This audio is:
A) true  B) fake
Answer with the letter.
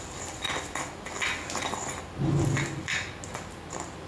A